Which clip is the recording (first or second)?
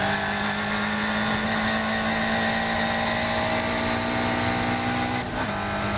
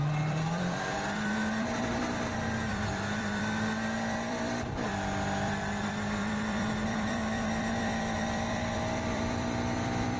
first